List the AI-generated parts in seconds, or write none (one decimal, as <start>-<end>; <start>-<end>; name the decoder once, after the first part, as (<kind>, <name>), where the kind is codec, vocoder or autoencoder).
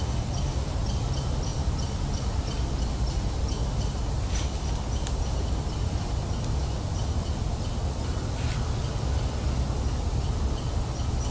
none